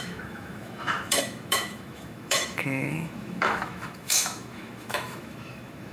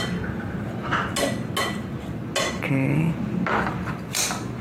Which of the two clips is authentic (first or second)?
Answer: second